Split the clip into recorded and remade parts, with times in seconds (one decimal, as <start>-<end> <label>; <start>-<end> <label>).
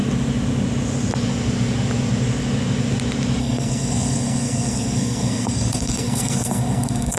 0.0-3.4 recorded; 3.4-7.2 remade